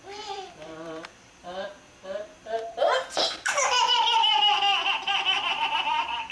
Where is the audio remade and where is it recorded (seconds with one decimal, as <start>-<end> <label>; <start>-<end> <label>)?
0.0-6.3 remade

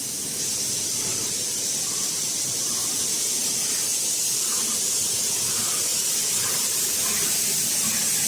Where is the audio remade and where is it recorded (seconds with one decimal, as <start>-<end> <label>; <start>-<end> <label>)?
0.0-1.1 recorded; 1.1-2.2 remade; 2.2-2.8 recorded; 2.8-3.5 remade; 3.5-5.9 recorded; 5.9-6.8 remade; 6.8-8.3 recorded

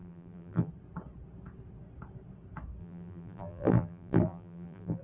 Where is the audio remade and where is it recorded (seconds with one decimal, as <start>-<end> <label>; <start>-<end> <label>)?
0.0-0.7 remade; 0.7-2.8 recorded; 2.8-5.0 remade

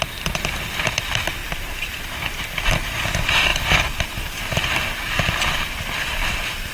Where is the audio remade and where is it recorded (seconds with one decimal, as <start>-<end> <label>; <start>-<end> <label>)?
0.0-6.7 remade